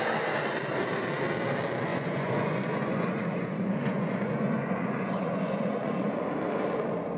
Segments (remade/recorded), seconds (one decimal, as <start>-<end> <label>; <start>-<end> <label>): 0.0-1.9 recorded; 1.9-6.2 remade; 6.2-7.2 recorded